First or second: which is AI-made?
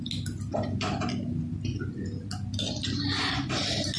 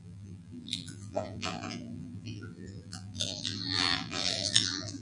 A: second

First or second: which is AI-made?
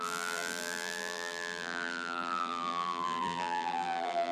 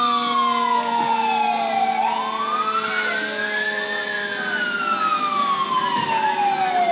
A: first